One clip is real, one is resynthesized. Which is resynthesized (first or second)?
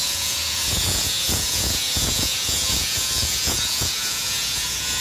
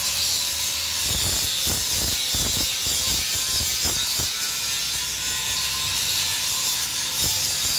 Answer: first